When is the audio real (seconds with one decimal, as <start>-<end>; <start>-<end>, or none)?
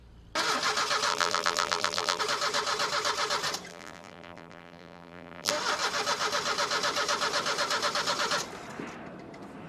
0.0-1.1; 2.2-3.7; 5.5-9.7